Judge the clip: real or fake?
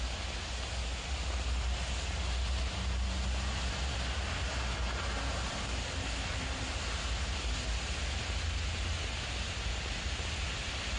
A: real